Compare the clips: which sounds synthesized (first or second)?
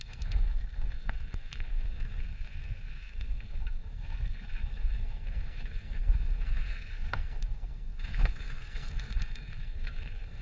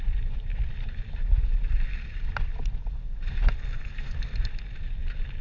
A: first